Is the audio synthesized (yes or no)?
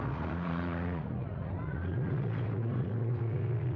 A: yes